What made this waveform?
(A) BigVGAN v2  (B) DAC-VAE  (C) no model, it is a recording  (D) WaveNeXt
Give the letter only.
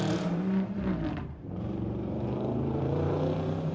A